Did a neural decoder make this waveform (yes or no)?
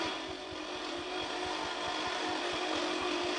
no